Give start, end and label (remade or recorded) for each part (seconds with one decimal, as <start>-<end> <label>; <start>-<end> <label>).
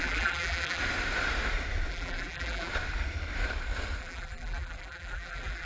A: 0.0-0.8 remade; 0.8-1.9 recorded; 1.9-2.7 remade; 2.7-4.0 recorded; 4.0-5.7 remade